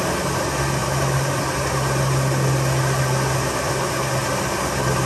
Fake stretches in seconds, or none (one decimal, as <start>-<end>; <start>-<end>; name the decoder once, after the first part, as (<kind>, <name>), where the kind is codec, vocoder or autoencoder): none